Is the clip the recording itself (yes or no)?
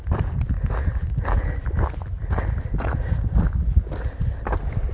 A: yes